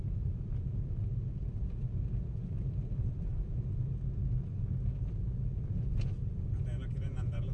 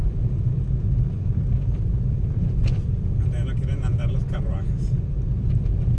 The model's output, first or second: second